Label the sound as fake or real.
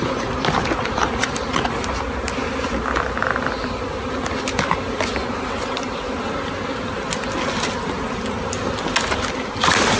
real